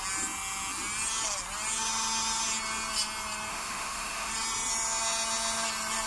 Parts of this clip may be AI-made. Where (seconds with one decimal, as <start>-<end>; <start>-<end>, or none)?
3.5-4.3